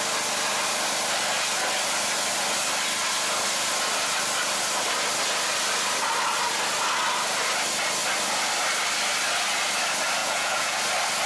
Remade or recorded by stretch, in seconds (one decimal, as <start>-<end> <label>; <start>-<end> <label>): 0.0-10.2 recorded; 10.2-10.8 remade; 10.8-11.3 recorded